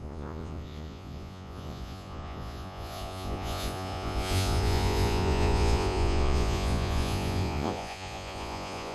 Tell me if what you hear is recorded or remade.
remade